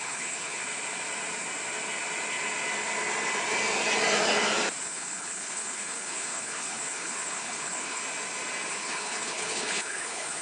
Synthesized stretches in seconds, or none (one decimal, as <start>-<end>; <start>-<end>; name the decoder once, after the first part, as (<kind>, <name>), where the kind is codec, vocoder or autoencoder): 0.0-0.6 (codec, HILCodec); 4.8-8.0; 8.7-10.4